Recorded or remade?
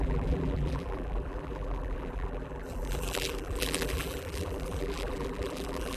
remade